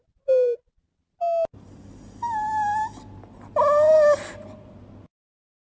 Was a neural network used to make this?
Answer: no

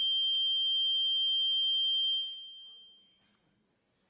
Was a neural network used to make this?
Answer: no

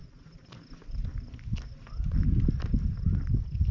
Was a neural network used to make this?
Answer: no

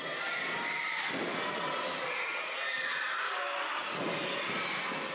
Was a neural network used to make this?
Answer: no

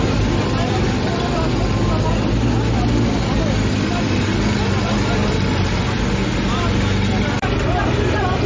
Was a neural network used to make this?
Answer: no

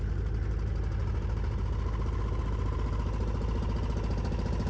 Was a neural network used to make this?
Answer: no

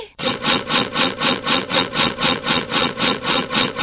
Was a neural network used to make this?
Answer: yes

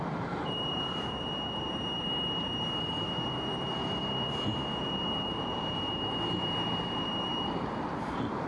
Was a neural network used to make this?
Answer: yes